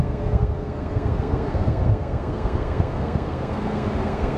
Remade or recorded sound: remade